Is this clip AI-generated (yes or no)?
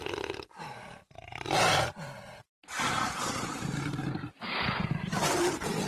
yes